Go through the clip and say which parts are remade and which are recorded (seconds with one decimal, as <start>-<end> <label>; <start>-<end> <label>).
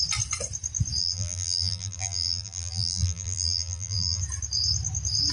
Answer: 0.0-1.0 recorded; 1.0-4.2 remade; 4.2-5.3 recorded